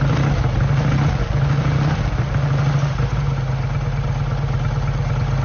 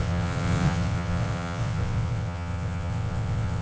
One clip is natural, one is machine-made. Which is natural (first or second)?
first